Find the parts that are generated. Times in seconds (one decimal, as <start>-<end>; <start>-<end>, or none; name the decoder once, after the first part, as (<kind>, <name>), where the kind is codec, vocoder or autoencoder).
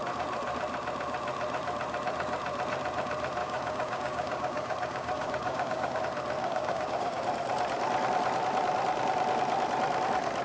3.4-6.0 (codec, DAC); 6.4-7.2